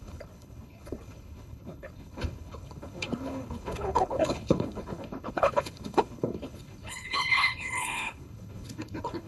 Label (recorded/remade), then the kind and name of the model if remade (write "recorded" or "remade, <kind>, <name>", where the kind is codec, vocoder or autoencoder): remade, codec, HILCodec